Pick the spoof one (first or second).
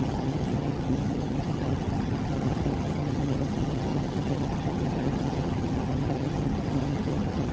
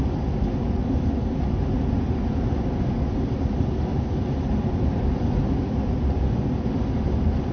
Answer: first